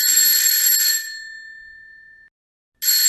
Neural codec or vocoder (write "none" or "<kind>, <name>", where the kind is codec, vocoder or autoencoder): none